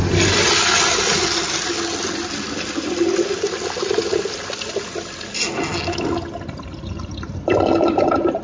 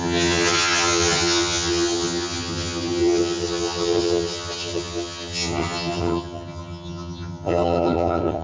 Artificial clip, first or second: second